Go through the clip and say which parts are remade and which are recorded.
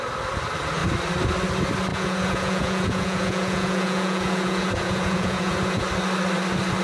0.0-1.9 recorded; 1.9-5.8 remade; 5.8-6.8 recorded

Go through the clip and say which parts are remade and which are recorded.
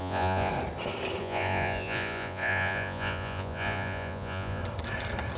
0.0-0.5 remade; 0.5-1.2 recorded; 1.2-4.6 remade; 4.6-5.4 recorded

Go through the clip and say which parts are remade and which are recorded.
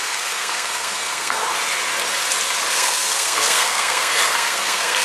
0.0-1.4 remade; 1.4-2.7 recorded; 2.7-5.0 remade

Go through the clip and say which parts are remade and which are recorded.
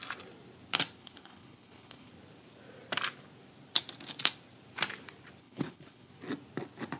0.0-1.0 recorded; 1.0-2.1 remade; 2.1-5.4 recorded; 5.4-6.1 remade; 6.1-7.0 recorded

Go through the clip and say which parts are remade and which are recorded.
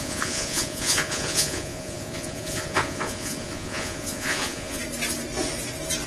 0.0-4.8 remade; 4.8-6.1 recorded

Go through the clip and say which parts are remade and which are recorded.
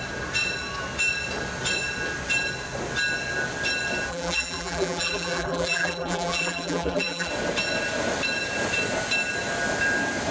0.0-4.1 recorded; 4.1-7.3 remade; 7.3-10.3 recorded